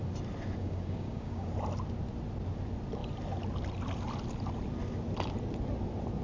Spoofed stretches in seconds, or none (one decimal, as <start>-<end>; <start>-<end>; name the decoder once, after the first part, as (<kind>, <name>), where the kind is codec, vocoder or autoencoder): 0.6-1.5 (codec, DAC)